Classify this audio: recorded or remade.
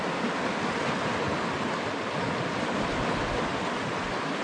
recorded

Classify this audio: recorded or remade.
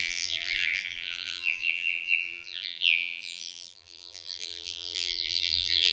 remade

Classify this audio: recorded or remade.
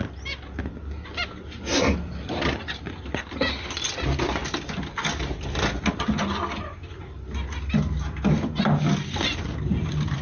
recorded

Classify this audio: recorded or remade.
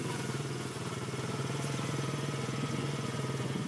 remade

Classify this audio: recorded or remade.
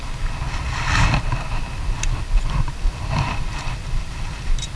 recorded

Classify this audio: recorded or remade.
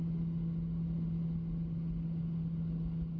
recorded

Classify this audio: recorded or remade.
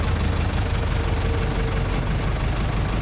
recorded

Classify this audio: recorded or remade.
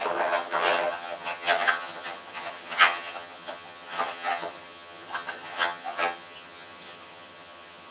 remade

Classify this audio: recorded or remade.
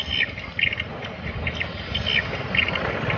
recorded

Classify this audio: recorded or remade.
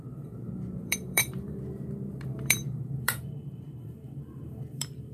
remade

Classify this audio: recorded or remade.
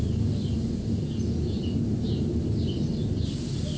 recorded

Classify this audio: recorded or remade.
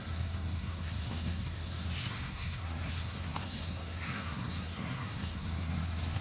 remade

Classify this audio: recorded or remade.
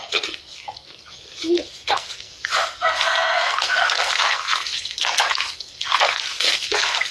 remade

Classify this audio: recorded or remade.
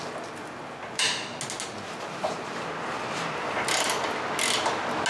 recorded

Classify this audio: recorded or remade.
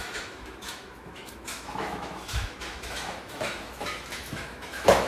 remade